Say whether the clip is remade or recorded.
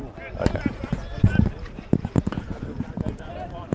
recorded